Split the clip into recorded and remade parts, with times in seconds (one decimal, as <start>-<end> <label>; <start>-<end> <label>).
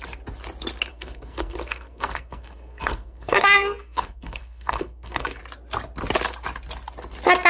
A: 0.0-0.9 recorded; 0.9-5.4 remade; 5.4-7.5 recorded